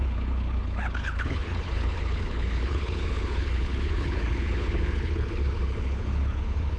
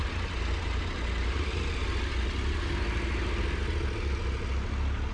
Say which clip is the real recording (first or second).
second